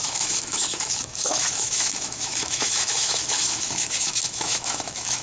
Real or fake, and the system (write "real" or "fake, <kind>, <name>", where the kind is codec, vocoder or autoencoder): fake, autoencoder, DAC-VAE